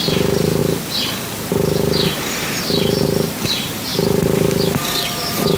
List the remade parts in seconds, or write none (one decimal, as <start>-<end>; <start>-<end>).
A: 0.0-0.6; 2.2-5.6